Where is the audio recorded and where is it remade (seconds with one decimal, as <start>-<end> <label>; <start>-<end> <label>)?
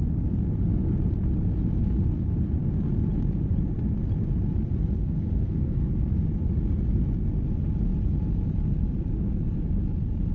0.0-5.0 recorded; 5.0-5.9 remade; 5.9-10.3 recorded